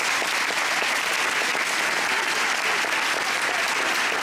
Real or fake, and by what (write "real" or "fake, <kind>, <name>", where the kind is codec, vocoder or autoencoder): real